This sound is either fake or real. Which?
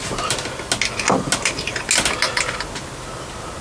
real